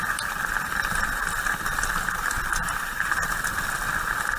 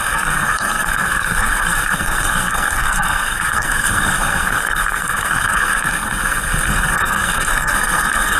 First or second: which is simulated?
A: second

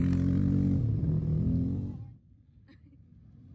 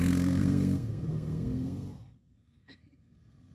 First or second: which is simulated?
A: second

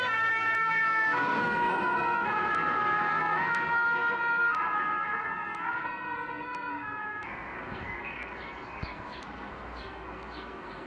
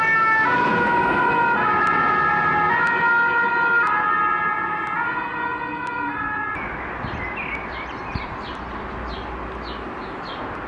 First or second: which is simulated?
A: first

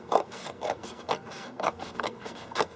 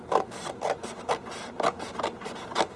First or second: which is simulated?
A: first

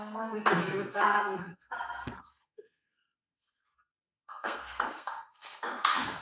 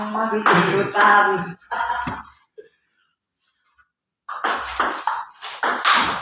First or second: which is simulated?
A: first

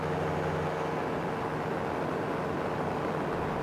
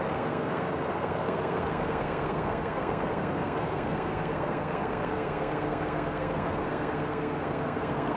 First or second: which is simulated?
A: second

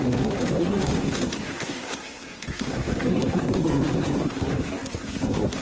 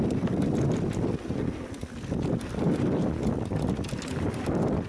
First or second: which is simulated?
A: first